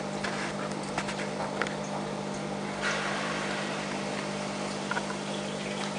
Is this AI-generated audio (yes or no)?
no